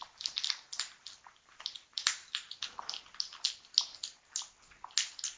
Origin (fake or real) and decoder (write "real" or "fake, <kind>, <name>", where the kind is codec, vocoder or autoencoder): real